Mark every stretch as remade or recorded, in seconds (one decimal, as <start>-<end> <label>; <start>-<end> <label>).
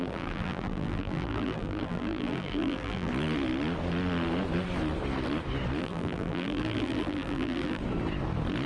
0.0-3.1 remade; 3.1-5.8 recorded; 5.8-7.8 remade; 7.8-8.7 recorded